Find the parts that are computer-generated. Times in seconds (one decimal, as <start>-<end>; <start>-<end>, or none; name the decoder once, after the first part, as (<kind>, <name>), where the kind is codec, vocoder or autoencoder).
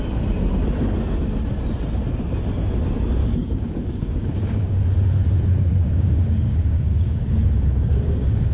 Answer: 3.2-4.8 (codec, DAC); 5.8-8.5